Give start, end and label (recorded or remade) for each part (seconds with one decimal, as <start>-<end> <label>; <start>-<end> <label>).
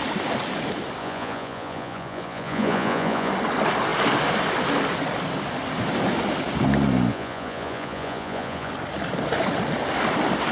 0.0-1.0 recorded; 1.0-3.3 remade; 3.3-7.1 recorded; 7.1-8.7 remade; 8.7-10.5 recorded